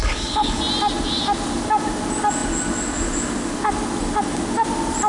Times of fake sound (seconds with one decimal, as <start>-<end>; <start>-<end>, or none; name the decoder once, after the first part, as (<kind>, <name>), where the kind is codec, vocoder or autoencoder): 0.0-0.6 (codec, HILCodec)

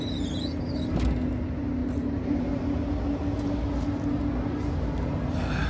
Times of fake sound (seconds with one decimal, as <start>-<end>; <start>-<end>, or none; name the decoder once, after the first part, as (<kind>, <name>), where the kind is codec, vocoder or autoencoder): 1.8-2.6 (vocoder, BigVGAN v2)